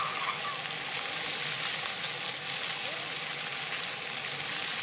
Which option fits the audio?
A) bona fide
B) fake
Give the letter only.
A